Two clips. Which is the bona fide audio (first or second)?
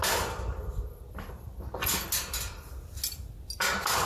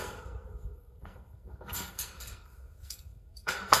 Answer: first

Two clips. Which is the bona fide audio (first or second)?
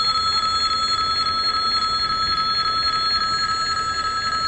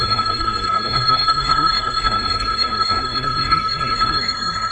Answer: first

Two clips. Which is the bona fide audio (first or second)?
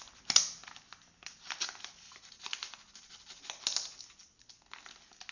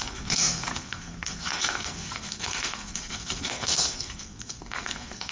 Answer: first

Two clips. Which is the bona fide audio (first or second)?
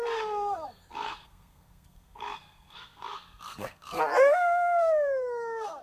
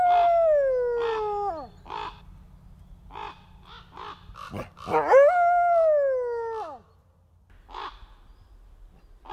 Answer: second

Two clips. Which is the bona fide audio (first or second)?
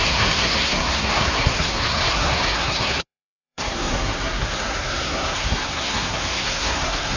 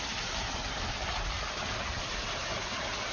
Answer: second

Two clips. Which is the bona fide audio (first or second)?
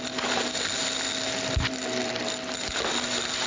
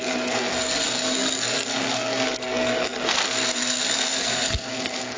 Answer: first